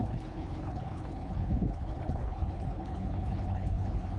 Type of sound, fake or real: fake